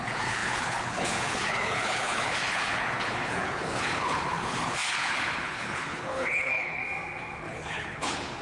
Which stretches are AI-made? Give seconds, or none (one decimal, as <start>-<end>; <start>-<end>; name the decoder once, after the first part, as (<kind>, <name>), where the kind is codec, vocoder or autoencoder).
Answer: 0.0-6.8 (codec, HILCodec); 7.4-8.4